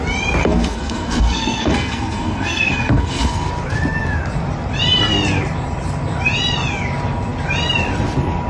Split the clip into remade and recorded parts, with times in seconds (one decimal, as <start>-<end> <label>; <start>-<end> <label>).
0.0-0.4 recorded; 0.4-3.5 remade; 3.5-8.5 recorded